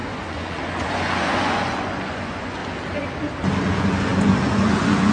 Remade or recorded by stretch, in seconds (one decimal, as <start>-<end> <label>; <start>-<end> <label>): 0.0-2.6 remade; 2.6-3.6 recorded; 3.6-5.1 remade